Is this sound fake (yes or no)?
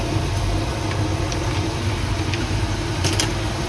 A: no